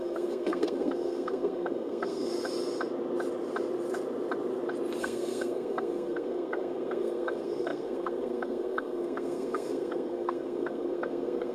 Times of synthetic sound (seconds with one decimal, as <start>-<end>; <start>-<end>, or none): 0.0-2.3; 5.0-11.5